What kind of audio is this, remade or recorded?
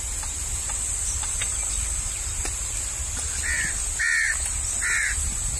recorded